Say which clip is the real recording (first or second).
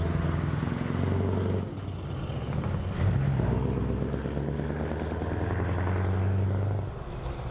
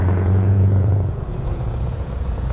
first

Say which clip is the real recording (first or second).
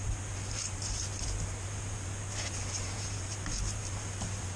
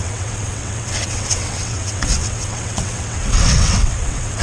first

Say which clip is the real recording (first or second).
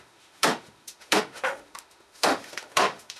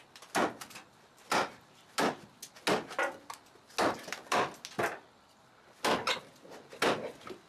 second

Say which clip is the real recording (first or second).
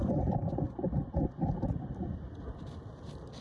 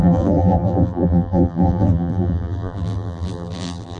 first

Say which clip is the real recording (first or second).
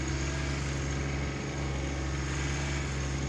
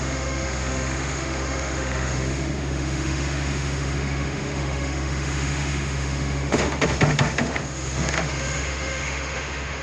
first